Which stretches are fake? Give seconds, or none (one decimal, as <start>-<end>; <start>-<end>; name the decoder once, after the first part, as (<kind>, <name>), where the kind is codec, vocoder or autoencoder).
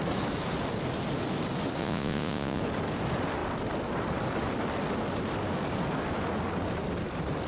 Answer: 1.8-2.6 (vocoder, Vocos)